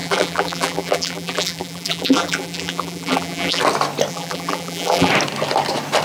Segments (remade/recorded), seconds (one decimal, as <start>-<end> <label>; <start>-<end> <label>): 0.0-3.6 remade; 3.6-4.1 recorded; 4.1-5.1 remade; 5.1-6.0 recorded

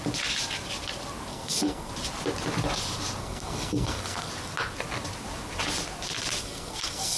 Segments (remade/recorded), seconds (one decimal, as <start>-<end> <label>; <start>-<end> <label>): 0.0-1.3 recorded; 1.3-1.9 remade; 1.9-3.2 recorded; 3.2-4.3 remade; 4.3-6.4 recorded; 6.4-7.2 remade

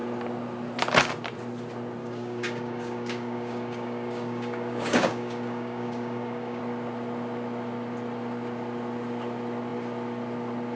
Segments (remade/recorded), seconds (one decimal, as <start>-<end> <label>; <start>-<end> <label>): 0.0-2.0 recorded; 2.0-6.6 remade; 6.6-10.8 recorded

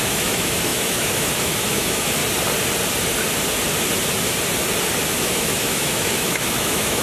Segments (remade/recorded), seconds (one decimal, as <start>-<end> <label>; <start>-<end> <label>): 0.0-2.2 remade; 2.2-5.2 recorded; 5.2-7.0 remade

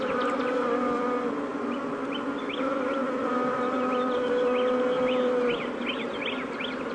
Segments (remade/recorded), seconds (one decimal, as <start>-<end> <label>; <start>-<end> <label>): 0.0-6.9 recorded